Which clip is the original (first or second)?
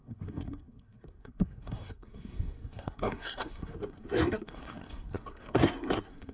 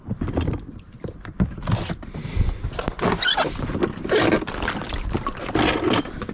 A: second